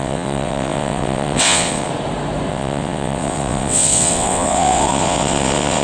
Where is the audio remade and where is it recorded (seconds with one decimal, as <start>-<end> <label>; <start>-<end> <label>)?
0.0-1.9 remade; 1.9-2.5 recorded; 2.5-5.8 remade